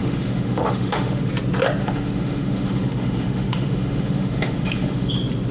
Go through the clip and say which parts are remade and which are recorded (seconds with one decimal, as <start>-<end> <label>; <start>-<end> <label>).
0.0-1.3 remade; 1.3-1.8 recorded; 1.8-5.1 remade; 5.1-5.5 recorded